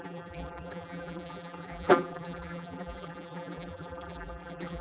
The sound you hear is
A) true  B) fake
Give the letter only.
B